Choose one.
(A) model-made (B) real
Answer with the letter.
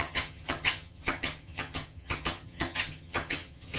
A